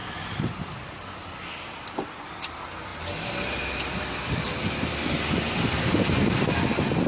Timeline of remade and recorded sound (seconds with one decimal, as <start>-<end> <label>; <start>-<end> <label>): 0.0-7.1 recorded